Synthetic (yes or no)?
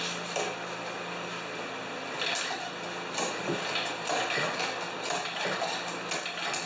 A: no